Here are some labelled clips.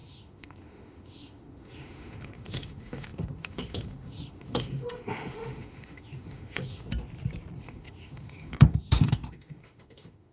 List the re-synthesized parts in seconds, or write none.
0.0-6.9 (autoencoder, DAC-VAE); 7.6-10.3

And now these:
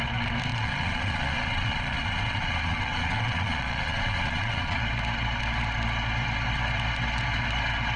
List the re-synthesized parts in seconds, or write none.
0.5-4.8 (vocoder, Vocos)

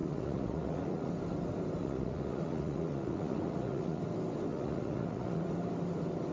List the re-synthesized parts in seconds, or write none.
0.0-1.1 (vocoder, Vocos); 1.8-4.0; 4.5-5.5

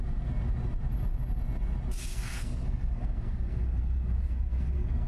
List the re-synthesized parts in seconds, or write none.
2.1-5.1 (codec, SNAC)

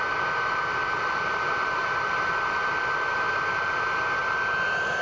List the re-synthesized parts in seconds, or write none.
none

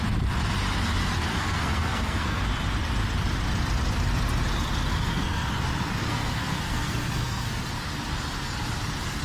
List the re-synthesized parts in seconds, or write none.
1.3-2.4 (codec, SNAC); 4.9-5.5; 6.0-7.6

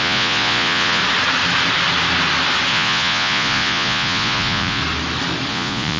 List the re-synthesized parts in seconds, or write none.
0.0-1.0 (vocoder, Vocos); 2.7-4.8; 5.5-6.0

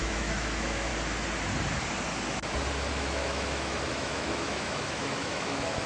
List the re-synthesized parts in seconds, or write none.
0.0-0.9 (autoencoder, DAC-VAE); 2.9-5.9